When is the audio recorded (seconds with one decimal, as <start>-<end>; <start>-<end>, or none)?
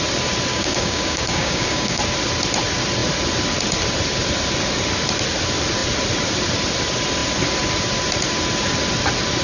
0.0-0.5; 2.0-9.4